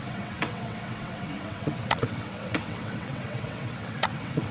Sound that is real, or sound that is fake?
fake